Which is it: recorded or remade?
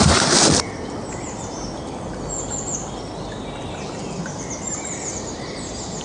recorded